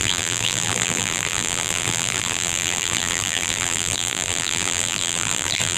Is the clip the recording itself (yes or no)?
no